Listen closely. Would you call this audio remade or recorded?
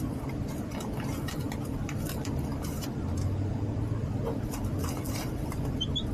recorded